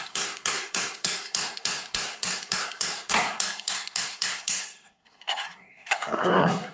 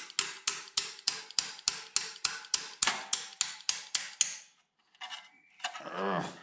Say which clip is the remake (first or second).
first